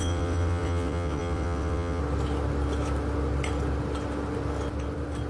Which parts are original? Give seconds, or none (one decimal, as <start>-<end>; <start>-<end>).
2.0-5.3